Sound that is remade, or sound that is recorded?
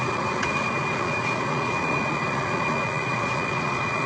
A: remade